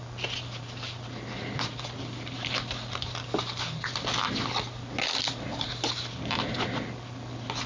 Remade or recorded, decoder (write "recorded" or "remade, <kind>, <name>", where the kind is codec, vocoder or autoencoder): recorded